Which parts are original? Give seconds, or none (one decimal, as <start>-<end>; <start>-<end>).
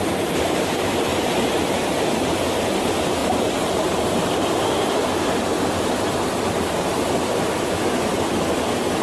0.0-1.1; 1.8-3.2; 5.3-9.0